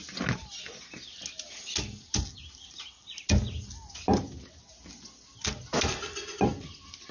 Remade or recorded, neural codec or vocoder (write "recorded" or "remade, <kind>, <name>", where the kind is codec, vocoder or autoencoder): recorded